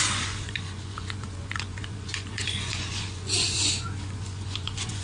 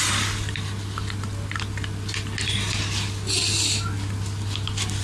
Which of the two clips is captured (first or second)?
second